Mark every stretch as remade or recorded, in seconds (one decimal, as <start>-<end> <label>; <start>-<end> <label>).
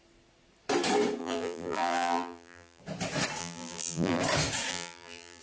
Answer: 0.0-1.2 recorded; 1.2-2.8 remade; 2.8-3.4 recorded; 3.4-4.2 remade; 4.2-4.7 recorded; 4.7-5.4 remade